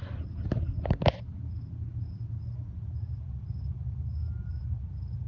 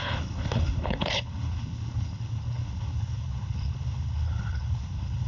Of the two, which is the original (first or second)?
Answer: first